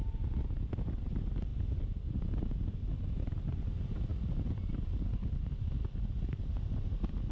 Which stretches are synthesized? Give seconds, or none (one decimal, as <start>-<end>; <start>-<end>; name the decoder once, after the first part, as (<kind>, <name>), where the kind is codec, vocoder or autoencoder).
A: none